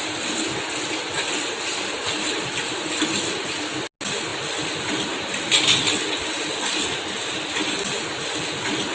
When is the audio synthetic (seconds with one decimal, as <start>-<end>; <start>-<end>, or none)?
none